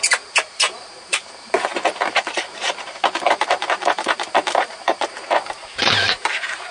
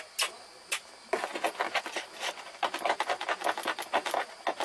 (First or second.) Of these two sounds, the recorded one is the second